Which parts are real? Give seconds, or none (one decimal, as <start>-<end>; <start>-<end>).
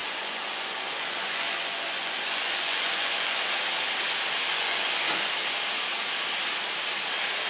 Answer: 3.4-4.5; 5.3-7.5